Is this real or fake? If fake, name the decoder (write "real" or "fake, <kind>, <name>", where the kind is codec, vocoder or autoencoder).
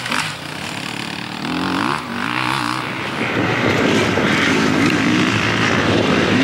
real